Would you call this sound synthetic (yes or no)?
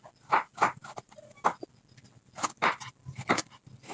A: no